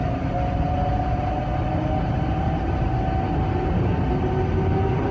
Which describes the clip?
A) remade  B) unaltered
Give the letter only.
B